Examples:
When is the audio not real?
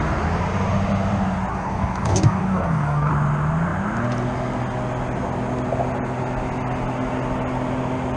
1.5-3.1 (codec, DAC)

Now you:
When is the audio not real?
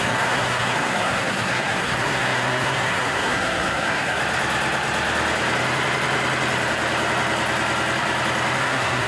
0.0-4.2 (codec, SNAC); 8.6-9.1